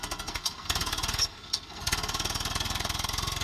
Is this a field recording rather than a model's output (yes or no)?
no